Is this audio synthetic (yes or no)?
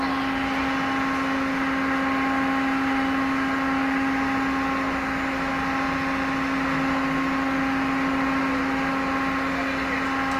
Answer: no